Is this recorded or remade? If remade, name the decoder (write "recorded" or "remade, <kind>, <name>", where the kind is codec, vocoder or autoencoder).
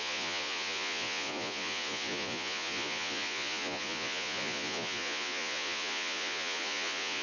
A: remade, vocoder, Vocos